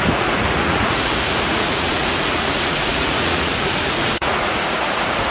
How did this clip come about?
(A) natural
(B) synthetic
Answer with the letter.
B